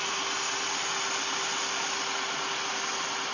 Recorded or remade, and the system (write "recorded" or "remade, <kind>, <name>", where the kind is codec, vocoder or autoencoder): recorded